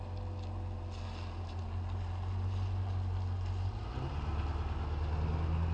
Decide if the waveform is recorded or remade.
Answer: recorded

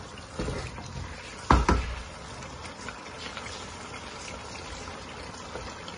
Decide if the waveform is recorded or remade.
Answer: recorded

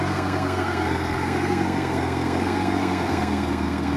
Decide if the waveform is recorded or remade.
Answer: remade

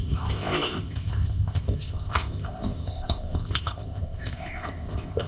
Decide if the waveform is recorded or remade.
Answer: remade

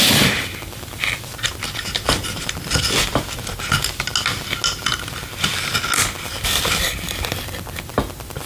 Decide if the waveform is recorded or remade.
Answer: recorded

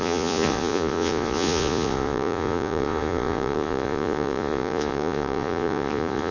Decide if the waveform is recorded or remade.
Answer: remade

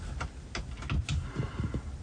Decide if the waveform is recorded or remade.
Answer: recorded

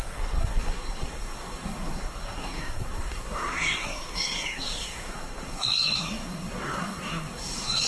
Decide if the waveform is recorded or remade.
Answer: remade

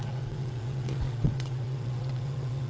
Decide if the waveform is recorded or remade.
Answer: remade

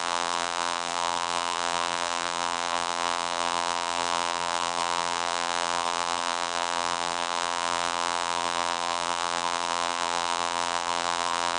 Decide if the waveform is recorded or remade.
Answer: remade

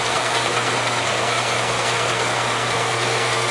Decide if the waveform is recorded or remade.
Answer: remade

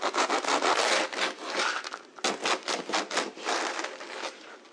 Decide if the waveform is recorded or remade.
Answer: recorded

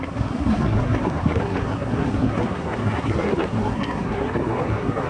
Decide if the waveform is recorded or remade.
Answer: remade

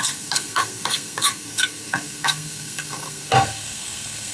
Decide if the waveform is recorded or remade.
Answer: remade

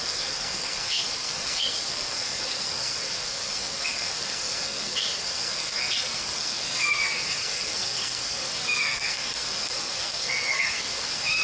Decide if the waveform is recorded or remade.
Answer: remade